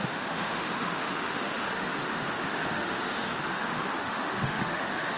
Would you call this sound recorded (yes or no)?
no